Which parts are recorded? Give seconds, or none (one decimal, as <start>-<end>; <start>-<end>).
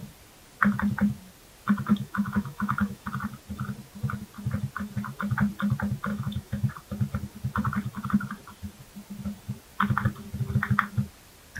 0.0-1.9; 3.1-6.1; 6.7-11.6